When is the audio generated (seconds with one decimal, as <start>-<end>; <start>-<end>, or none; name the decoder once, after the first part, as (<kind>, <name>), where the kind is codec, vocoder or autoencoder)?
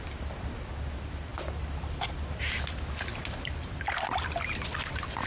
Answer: 1.3-2.1 (vocoder, BigVGAN v2); 3.1-3.8